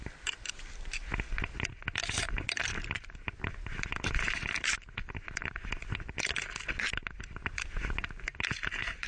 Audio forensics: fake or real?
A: real